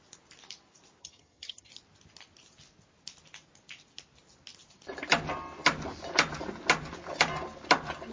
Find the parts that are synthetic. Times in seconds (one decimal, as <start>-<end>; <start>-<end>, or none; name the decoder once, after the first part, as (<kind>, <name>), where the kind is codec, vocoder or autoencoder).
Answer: 1.0-1.7 (vocoder, HiFi-GAN)